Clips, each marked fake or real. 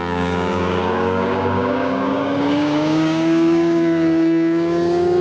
fake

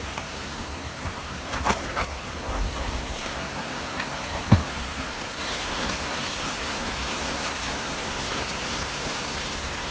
fake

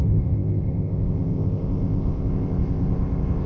fake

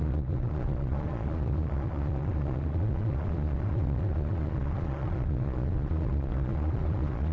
fake